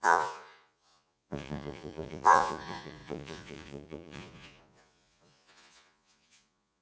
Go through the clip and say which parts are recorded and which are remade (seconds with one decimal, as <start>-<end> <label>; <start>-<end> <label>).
0.0-6.8 remade